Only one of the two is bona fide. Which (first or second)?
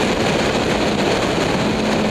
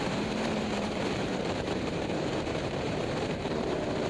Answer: first